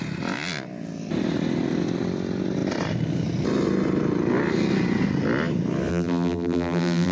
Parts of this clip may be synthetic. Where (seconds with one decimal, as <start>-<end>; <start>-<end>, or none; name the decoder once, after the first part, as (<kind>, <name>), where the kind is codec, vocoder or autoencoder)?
5.9-7.1 (vocoder, BigVGAN v2)

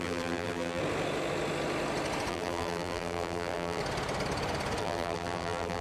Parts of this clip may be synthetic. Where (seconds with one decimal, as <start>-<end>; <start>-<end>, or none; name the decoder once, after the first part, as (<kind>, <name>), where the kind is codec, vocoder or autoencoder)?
0.0-0.8 (vocoder, BigVGAN v2); 2.3-3.8; 4.8-5.8